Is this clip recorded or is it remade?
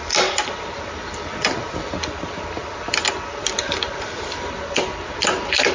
remade